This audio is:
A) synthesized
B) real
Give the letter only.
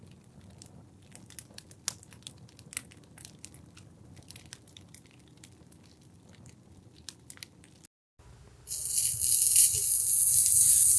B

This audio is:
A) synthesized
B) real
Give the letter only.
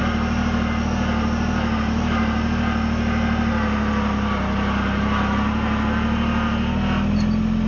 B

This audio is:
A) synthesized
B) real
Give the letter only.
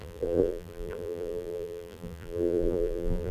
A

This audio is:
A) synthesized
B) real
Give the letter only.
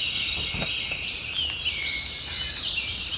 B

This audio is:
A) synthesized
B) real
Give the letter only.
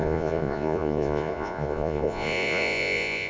A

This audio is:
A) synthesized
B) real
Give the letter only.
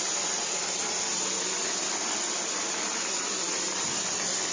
A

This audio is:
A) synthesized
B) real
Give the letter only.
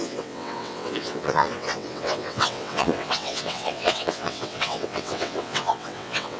A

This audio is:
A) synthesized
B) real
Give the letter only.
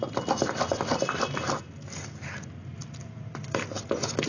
B